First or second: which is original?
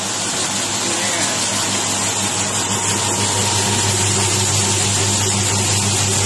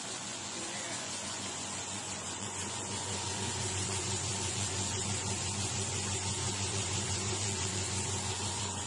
first